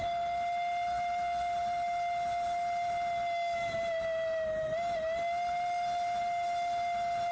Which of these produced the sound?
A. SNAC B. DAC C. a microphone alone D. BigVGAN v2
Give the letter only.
C